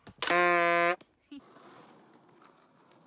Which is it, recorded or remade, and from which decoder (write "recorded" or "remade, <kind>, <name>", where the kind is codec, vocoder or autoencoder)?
recorded